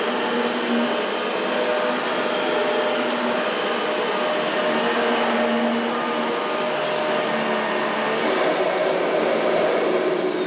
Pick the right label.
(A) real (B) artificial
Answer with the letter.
A